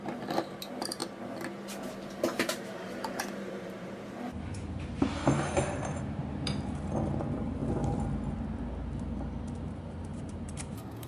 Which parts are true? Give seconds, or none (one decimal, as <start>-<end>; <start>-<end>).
1.0-2.0; 7.6-9.6